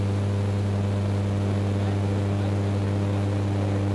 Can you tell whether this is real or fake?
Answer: real